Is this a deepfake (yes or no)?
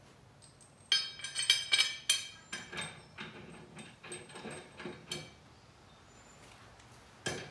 no